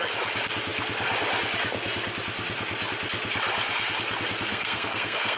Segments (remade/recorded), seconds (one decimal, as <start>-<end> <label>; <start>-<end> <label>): 0.0-4.5 recorded; 4.5-5.4 remade

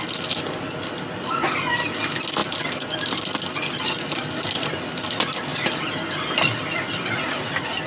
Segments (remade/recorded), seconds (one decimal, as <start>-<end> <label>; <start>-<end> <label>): 0.0-7.9 recorded

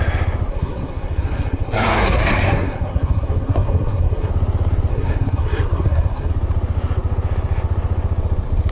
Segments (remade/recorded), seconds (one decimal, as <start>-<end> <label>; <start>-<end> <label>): 0.0-0.5 recorded; 0.5-4.3 remade; 4.3-4.9 recorded; 4.9-6.3 remade; 6.3-8.7 recorded